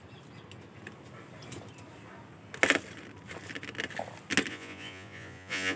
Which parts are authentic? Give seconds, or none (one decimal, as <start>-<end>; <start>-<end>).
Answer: 0.0-4.5